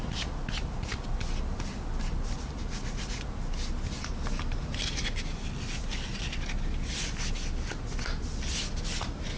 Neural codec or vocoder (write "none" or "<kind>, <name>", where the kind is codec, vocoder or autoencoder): none